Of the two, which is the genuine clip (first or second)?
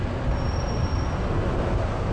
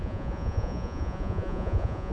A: first